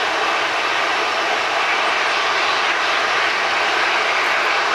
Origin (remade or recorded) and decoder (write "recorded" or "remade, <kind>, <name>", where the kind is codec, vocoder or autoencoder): recorded